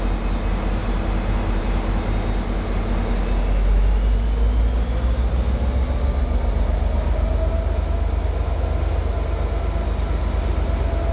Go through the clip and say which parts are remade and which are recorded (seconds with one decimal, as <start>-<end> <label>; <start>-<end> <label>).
0.0-11.1 recorded